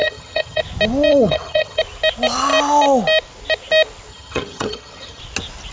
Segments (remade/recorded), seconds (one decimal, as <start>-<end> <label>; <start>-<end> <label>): 0.0-0.6 remade; 0.6-1.1 recorded; 1.1-1.8 remade; 1.8-4.1 recorded; 4.1-5.2 remade; 5.2-5.7 recorded

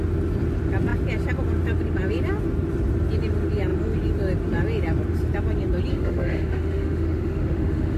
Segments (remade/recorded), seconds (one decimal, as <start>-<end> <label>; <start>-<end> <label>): 0.0-5.9 recorded; 5.9-8.0 remade